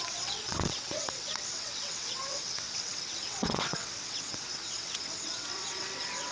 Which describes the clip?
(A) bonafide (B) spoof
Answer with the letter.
B